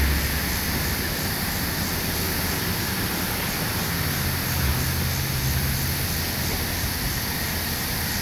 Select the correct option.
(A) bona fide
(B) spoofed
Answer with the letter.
A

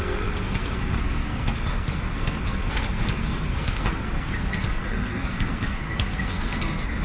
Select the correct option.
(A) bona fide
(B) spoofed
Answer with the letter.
B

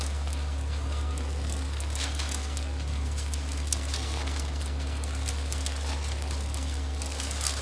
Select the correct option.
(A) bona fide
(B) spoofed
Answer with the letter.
B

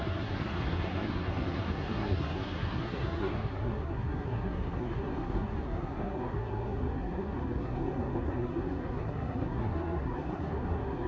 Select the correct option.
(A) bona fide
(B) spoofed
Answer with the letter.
B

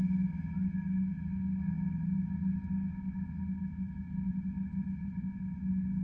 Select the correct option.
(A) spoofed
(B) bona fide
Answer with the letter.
B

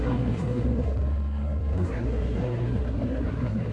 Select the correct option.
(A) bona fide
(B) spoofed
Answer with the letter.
B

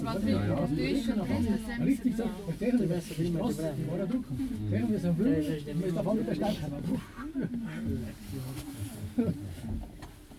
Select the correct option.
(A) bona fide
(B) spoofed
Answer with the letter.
A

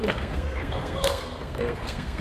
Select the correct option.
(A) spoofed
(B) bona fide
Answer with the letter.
A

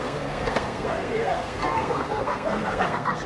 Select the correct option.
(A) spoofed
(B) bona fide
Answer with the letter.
A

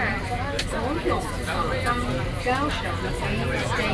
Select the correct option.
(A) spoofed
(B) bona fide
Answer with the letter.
B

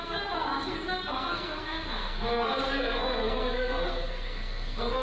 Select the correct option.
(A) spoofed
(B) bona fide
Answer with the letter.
A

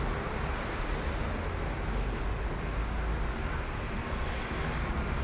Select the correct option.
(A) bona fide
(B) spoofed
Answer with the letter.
A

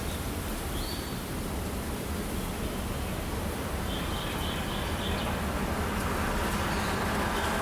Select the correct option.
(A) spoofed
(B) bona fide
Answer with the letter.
B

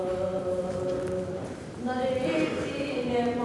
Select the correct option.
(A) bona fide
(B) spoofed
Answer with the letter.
A